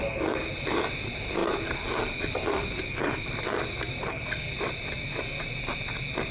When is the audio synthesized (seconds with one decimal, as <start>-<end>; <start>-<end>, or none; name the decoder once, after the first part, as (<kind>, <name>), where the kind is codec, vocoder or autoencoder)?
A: 1.4-5.2 (vocoder, BigVGAN v2)